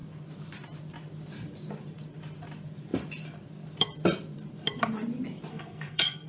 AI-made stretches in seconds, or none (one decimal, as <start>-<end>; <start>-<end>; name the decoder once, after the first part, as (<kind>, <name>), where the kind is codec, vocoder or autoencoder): 5.5-6.3 (codec, SNAC)